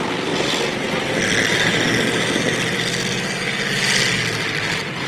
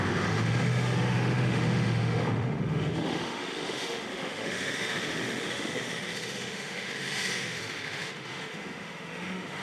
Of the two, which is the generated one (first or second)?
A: second